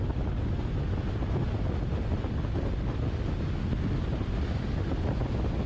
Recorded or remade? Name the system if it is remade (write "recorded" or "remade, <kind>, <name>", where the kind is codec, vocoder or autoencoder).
recorded